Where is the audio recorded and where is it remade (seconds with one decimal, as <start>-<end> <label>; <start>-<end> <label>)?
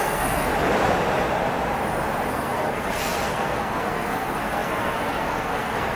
0.0-0.5 remade; 0.5-2.3 recorded; 2.3-6.0 remade